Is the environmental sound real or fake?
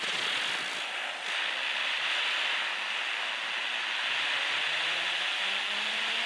real